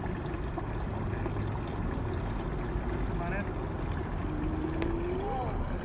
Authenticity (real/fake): real